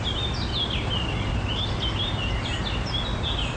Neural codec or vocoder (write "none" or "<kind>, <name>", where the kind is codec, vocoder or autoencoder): none